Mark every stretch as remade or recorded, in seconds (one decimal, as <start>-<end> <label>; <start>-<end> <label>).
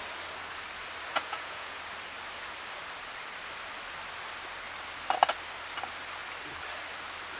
0.0-1.1 recorded; 1.1-1.8 remade; 1.8-7.4 recorded